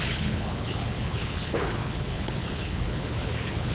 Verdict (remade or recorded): remade